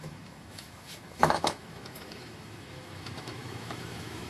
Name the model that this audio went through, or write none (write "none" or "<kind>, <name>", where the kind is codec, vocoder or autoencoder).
autoencoder, DAC-VAE